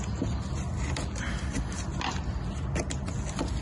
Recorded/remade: recorded